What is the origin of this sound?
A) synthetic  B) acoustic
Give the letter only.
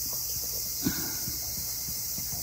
A